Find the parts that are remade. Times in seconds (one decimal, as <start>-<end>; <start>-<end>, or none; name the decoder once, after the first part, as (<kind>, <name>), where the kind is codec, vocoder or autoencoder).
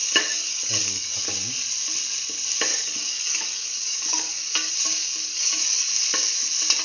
0.0-1.2 (codec, DAC); 2.7-4.7; 5.3-5.9